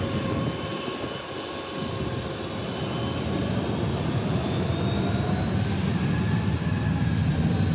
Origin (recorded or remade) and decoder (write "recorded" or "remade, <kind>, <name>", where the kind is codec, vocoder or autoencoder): recorded